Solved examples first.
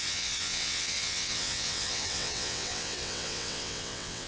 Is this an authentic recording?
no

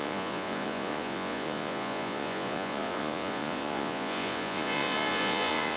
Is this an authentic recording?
no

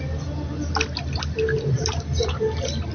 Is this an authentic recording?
yes